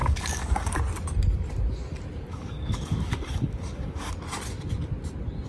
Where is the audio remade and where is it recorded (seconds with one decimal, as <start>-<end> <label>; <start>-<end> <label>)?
0.0-0.8 remade; 0.8-2.3 recorded; 2.3-4.1 remade; 4.1-5.5 recorded